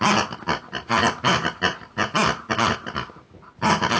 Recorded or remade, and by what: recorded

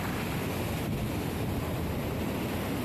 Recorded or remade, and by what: recorded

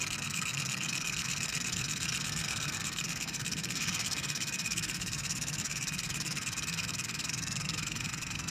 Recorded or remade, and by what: remade, codec, SNAC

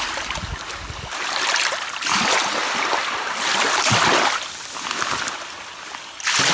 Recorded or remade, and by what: recorded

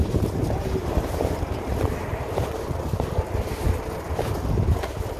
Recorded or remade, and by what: recorded